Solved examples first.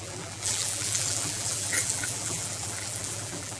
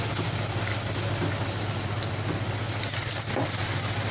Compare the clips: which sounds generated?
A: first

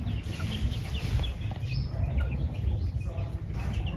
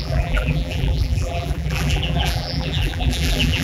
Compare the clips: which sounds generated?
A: second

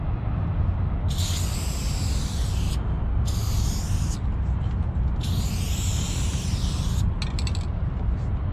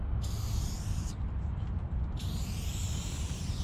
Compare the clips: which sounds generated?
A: second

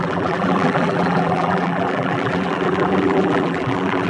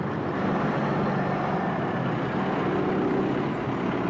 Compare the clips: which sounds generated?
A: first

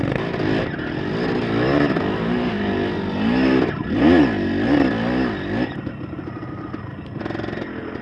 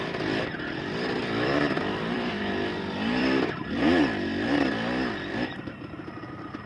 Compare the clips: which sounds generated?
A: second